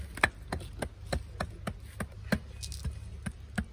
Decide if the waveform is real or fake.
real